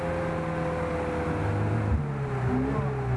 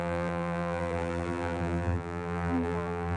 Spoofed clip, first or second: second